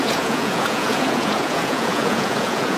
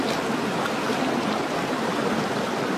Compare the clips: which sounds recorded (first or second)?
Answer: second